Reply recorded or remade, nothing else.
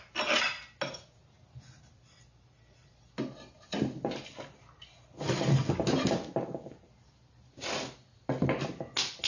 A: recorded